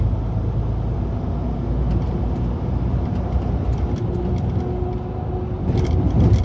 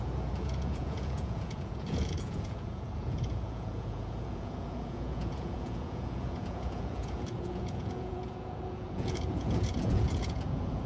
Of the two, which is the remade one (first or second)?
second